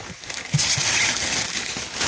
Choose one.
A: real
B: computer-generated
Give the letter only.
A